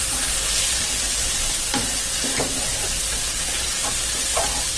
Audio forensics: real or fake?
real